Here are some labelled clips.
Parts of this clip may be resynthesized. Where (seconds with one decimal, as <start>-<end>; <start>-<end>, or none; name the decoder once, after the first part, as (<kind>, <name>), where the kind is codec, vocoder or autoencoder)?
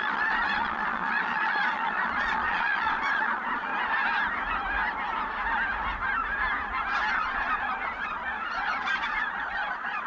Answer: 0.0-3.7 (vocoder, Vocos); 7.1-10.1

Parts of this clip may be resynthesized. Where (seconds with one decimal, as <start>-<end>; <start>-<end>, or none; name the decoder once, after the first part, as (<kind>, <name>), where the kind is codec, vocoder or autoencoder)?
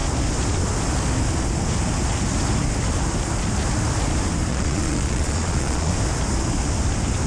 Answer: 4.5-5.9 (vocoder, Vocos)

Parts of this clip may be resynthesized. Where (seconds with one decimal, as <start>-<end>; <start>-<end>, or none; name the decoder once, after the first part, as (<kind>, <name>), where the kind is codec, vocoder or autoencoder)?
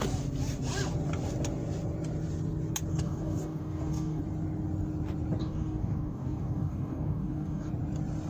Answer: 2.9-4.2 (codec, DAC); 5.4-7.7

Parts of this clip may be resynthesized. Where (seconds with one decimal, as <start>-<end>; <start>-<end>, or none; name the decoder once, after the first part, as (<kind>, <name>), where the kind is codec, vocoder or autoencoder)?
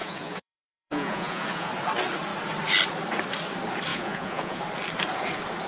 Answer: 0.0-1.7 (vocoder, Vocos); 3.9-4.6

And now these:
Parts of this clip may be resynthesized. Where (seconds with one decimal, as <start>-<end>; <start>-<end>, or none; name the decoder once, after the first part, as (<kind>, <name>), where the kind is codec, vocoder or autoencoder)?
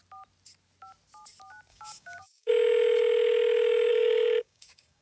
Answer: 1.7-2.5 (codec, DAC); 3.9-5.0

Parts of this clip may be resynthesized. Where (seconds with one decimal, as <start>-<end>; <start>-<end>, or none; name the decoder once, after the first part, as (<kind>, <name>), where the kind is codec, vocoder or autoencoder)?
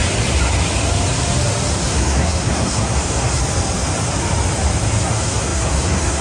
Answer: 1.9-3.4 (codec, SNAC); 5.0-6.2